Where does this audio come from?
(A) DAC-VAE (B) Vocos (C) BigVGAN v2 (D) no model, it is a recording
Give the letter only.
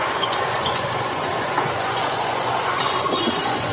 B